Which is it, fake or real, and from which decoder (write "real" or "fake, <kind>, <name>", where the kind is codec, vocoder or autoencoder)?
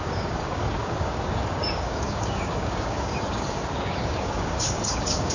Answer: fake, codec, DAC